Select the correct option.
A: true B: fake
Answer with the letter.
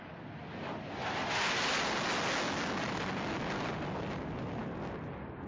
A